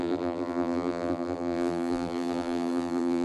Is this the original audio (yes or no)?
no